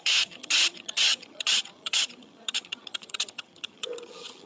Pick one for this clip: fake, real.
fake